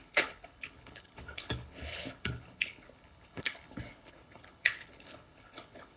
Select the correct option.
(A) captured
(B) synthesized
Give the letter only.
B